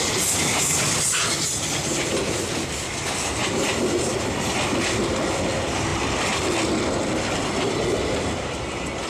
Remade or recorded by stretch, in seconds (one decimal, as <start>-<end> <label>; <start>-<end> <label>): 0.0-9.1 recorded